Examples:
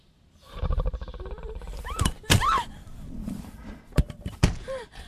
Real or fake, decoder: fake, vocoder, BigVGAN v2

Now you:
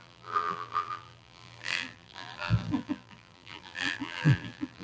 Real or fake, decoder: fake, vocoder, BigVGAN v2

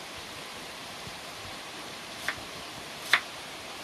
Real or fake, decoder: fake, vocoder, BigVGAN v2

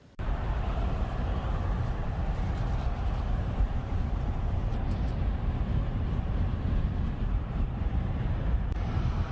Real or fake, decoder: fake, vocoder, BigVGAN v2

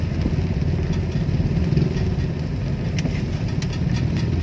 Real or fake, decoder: real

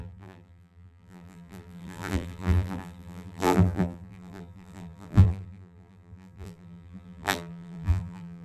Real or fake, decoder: fake, vocoder, BigVGAN v2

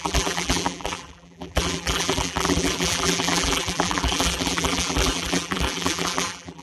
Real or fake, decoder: fake, vocoder, BigVGAN v2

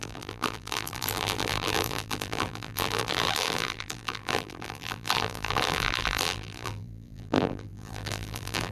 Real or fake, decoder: fake, vocoder, BigVGAN v2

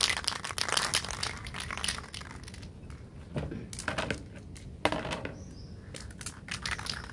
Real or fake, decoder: real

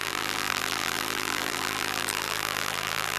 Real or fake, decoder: fake, vocoder, BigVGAN v2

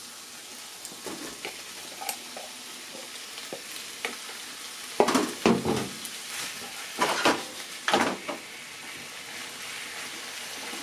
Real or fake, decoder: real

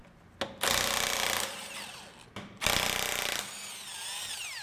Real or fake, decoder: real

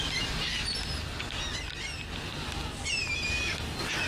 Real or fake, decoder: real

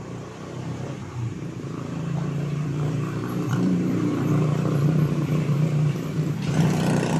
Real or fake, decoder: fake, vocoder, BigVGAN v2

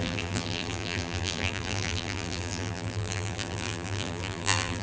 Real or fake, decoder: fake, vocoder, BigVGAN v2